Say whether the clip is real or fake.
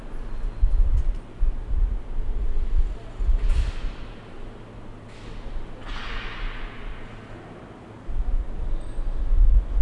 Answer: real